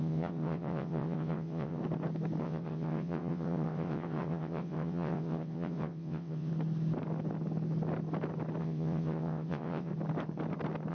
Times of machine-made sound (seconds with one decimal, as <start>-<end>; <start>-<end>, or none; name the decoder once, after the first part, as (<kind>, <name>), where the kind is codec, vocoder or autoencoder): 0.0-1.8 (vocoder, WaveNeXt); 2.4-6.5; 8.6-9.9